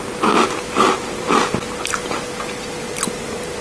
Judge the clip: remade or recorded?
recorded